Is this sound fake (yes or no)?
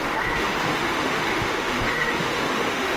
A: yes